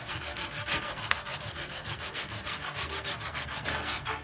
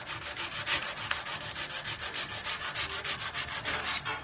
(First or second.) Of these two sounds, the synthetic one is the first